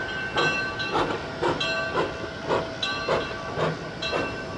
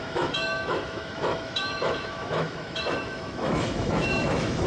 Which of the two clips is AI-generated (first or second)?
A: second